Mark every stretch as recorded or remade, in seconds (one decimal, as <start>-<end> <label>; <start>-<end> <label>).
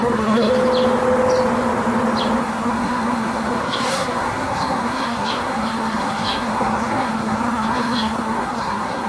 0.0-0.5 remade; 0.5-2.4 recorded; 2.4-9.1 remade